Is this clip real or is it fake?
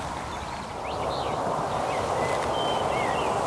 real